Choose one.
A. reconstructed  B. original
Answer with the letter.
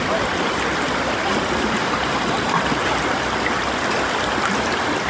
B